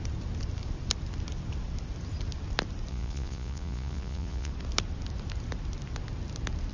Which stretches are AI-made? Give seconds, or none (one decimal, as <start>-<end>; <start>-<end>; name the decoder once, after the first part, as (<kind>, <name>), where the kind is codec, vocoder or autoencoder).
2.9-4.5 (vocoder, Vocos)